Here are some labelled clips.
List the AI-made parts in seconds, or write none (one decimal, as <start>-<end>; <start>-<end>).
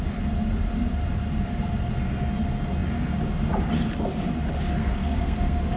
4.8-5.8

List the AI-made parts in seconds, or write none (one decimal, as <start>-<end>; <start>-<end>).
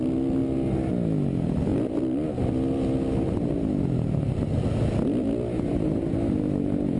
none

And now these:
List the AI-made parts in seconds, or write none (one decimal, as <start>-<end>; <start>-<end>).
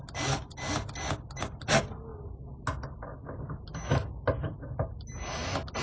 none